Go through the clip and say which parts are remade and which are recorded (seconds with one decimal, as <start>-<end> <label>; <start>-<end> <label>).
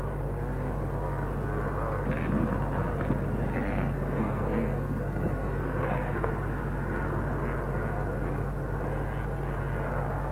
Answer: 0.0-3.5 recorded; 3.5-6.3 remade; 6.3-10.3 recorded